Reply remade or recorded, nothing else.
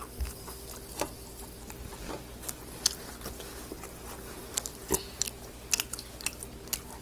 recorded